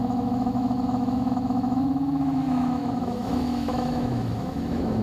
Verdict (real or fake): fake